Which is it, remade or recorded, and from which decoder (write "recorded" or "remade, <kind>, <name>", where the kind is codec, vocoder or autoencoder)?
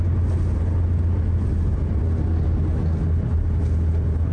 recorded